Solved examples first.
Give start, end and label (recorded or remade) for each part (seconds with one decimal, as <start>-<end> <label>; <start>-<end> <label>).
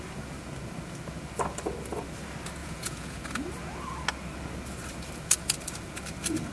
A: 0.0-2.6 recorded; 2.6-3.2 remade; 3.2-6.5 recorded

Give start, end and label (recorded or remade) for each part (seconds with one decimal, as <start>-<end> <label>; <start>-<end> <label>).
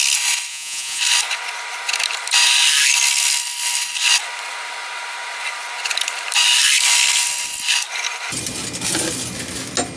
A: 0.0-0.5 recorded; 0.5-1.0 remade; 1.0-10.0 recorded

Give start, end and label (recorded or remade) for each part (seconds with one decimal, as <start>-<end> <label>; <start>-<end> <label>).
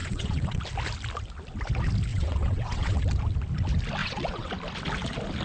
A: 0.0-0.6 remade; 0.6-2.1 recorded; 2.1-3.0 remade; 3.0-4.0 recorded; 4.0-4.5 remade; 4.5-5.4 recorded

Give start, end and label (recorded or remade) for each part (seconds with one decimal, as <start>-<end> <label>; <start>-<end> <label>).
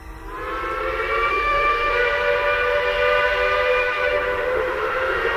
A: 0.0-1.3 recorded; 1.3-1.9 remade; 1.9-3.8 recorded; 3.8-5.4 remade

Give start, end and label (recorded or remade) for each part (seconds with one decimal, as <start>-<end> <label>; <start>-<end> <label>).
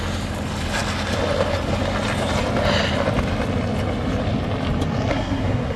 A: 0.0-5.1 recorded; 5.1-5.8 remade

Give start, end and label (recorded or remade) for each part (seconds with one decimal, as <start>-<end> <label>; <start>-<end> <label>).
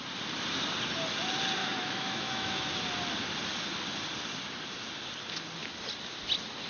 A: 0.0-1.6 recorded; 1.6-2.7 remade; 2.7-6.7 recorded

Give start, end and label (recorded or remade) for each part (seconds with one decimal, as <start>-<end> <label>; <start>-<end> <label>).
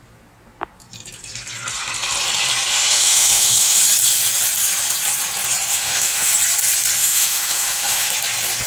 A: 0.0-2.7 recorded; 2.7-3.8 remade; 3.8-5.7 recorded; 5.7-6.3 remade; 6.3-7.0 recorded; 7.0-8.1 remade; 8.1-8.7 recorded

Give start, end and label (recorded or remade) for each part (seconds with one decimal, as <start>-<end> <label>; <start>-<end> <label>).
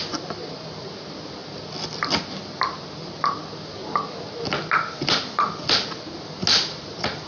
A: 0.0-7.3 recorded